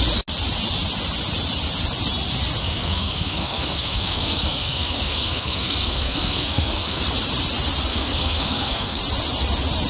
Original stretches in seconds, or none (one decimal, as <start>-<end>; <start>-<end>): 0.0-2.6; 7.0-7.9; 9.0-9.9